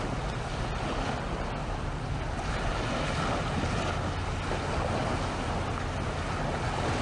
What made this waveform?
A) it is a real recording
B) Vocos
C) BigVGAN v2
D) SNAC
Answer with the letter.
A